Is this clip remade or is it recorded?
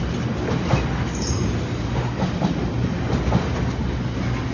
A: recorded